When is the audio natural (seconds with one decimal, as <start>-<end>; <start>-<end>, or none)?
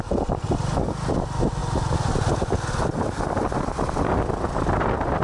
0.0-5.2